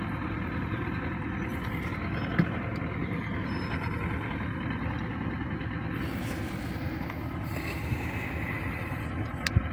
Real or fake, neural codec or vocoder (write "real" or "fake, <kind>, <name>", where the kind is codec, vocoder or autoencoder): real